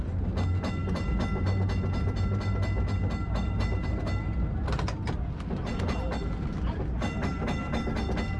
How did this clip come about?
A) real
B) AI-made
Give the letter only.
A